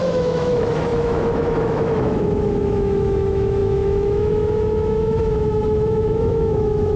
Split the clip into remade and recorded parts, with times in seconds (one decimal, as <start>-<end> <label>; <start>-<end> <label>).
0.0-7.0 remade